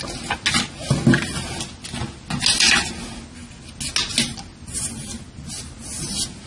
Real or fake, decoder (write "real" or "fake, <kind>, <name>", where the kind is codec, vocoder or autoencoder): real